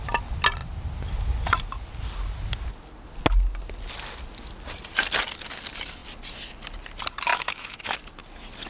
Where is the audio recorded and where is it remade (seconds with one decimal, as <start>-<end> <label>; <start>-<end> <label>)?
0.0-7.3 recorded; 7.3-7.9 remade; 7.9-8.7 recorded